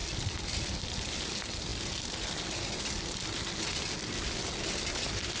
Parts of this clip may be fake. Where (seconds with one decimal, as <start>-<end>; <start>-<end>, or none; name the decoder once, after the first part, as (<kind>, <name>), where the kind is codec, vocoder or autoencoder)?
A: none